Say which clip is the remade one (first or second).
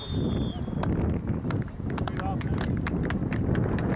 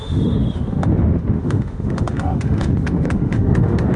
second